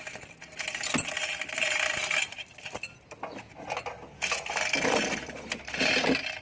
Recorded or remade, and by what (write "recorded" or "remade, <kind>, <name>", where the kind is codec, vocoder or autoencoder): recorded